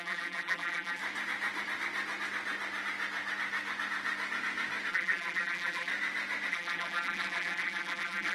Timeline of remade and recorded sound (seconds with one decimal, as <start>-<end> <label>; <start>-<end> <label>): 0.0-1.0 remade; 1.0-4.9 recorded; 4.9-5.9 remade; 5.9-6.5 recorded; 6.5-8.3 remade